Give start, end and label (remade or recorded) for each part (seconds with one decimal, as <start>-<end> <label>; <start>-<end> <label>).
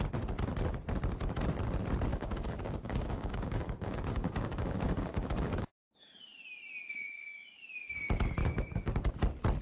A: 0.0-2.1 recorded; 2.1-5.7 remade; 5.7-8.4 recorded; 8.4-9.1 remade; 9.1-9.6 recorded